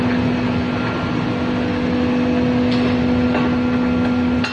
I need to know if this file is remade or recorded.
recorded